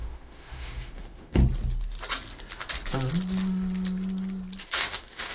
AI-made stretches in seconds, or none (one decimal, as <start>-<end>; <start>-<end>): 0.0-1.4; 4.6-5.3